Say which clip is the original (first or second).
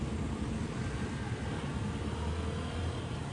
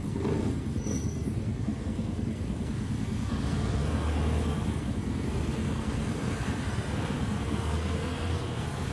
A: first